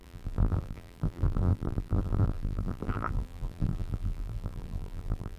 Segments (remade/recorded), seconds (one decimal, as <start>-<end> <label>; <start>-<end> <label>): 0.0-5.4 remade

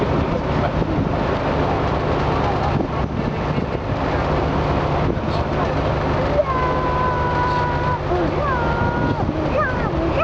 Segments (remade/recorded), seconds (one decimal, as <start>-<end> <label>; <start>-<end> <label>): 0.0-6.4 recorded; 6.4-8.1 remade; 8.1-10.2 recorded

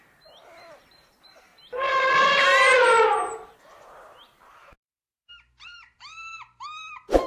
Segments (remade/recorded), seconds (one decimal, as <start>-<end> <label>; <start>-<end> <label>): 0.0-1.5 remade; 1.5-3.6 recorded; 3.6-7.3 remade

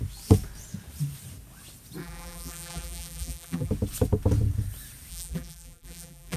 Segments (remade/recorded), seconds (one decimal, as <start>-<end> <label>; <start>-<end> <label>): 0.0-2.0 recorded; 2.0-3.7 remade; 3.7-5.1 recorded; 5.1-6.4 remade

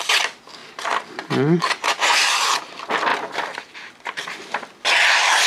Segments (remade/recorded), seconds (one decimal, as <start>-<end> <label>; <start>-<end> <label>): 0.0-0.6 recorded; 0.6-2.6 remade; 2.6-3.1 recorded; 3.1-4.2 remade; 4.2-5.5 recorded